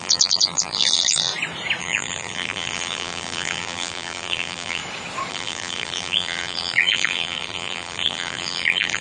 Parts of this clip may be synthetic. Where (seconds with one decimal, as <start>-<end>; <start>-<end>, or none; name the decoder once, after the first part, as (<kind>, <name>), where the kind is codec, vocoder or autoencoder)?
0.0-1.3 (vocoder, BigVGAN v2); 1.8-4.8; 5.3-9.0